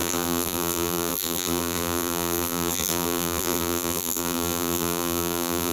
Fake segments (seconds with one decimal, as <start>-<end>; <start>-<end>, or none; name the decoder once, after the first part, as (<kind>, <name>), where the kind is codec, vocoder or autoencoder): 0.0-5.7 (vocoder, BigVGAN v2)